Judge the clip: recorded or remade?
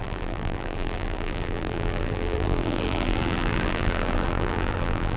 remade